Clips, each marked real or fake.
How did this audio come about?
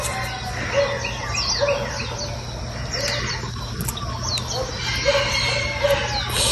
real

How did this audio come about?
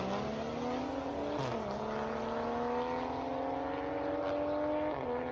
real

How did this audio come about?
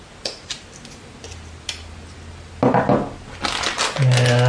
real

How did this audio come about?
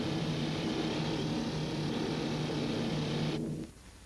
real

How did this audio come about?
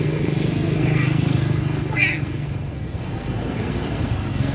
fake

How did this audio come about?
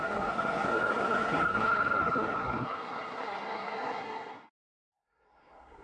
fake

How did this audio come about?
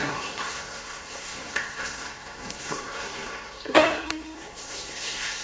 fake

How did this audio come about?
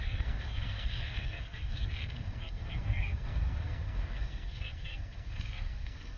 fake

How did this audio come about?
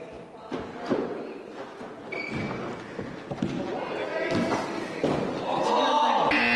real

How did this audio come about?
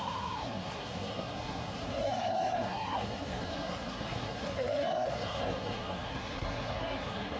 fake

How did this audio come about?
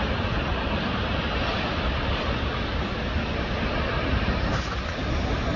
real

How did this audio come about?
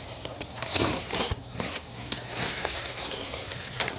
fake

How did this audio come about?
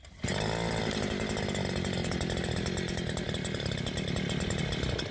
real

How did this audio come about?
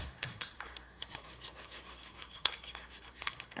fake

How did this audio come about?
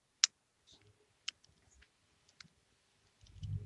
real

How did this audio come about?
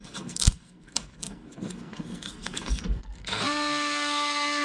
fake